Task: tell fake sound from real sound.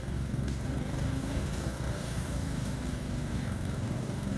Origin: fake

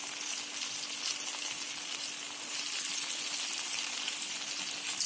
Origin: real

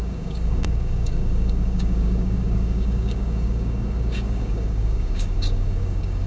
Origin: fake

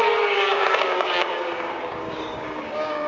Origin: fake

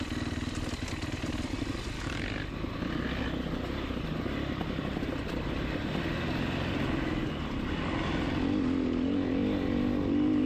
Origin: real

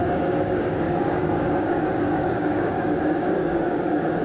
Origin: fake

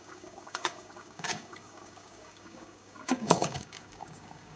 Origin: fake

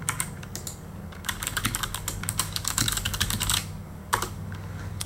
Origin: fake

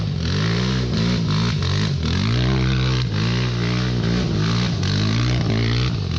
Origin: real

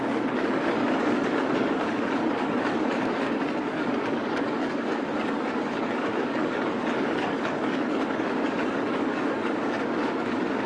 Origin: fake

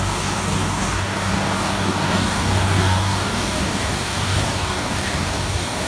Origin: fake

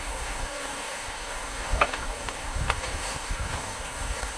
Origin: fake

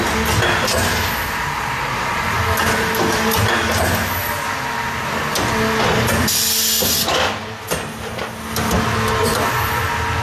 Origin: real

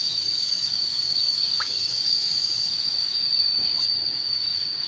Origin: fake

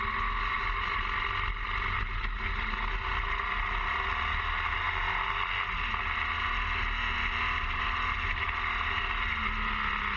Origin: real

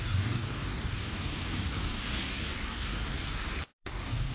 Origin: fake